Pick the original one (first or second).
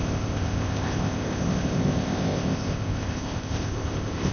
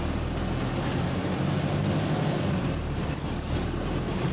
second